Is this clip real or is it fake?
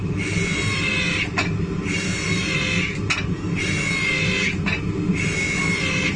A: real